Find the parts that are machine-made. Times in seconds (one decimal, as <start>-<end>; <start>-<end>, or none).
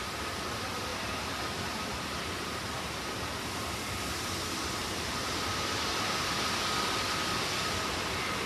0.9-2.7